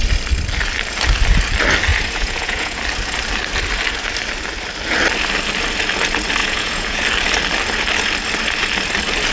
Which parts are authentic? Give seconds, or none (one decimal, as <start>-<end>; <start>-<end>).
0.0-1.9; 2.8-6.4; 7.0-9.3